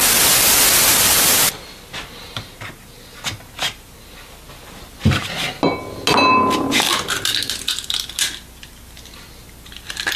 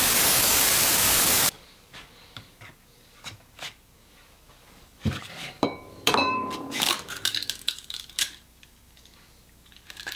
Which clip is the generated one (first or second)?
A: second